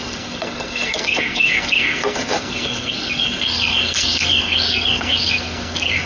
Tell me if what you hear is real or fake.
fake